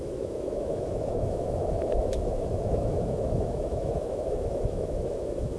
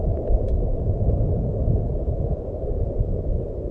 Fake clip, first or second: first